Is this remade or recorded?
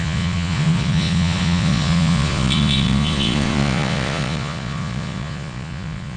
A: remade